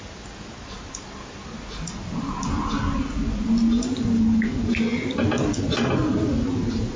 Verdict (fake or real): real